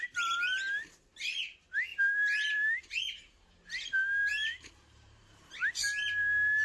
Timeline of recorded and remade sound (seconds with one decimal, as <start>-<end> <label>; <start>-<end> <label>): 0.0-1.9 recorded; 1.9-3.5 remade; 3.5-4.3 recorded; 4.3-5.5 remade; 5.5-6.6 recorded